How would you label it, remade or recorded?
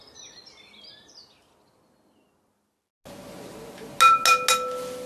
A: recorded